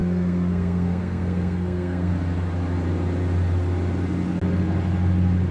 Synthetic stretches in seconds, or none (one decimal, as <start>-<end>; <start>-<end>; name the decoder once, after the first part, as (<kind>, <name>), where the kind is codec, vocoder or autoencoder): 0.0-2.1 (codec, SNAC)